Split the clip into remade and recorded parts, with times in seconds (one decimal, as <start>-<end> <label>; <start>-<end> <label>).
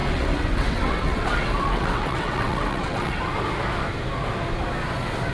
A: 0.0-3.2 remade; 3.2-5.3 recorded